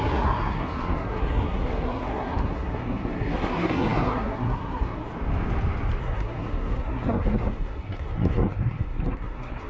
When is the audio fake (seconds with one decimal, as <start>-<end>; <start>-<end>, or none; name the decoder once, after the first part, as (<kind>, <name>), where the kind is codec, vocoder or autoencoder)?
0.0-5.1 (codec, SNAC); 6.0-9.7